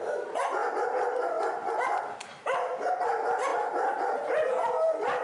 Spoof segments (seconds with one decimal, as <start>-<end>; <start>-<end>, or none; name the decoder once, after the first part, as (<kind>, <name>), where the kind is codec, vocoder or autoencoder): none